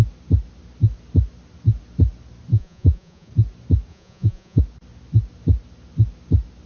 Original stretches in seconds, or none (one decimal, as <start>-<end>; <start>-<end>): 0.0-2.5; 3.3-3.9; 4.6-6.7